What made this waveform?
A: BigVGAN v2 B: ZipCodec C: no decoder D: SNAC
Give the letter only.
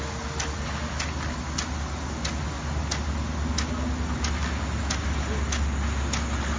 C